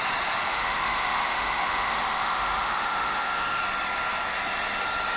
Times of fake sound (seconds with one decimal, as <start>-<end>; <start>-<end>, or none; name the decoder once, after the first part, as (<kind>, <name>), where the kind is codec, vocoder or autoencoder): 0.5-3.6 (autoencoder, DAC-VAE)